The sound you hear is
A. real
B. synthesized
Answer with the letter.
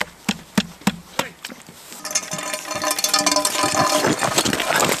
A